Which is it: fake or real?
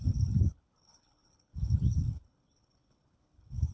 fake